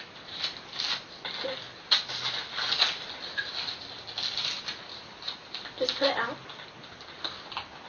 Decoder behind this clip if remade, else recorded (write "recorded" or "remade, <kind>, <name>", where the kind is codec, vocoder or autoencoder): recorded